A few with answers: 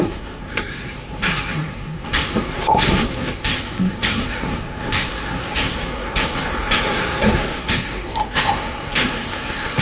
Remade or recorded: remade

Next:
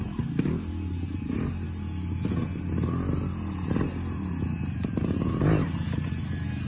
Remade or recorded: recorded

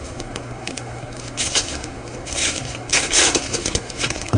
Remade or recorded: remade